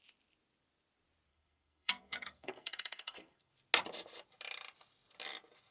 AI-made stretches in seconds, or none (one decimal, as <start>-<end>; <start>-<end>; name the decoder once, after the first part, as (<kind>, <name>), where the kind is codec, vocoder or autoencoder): 1.3-3.5 (codec, SNAC)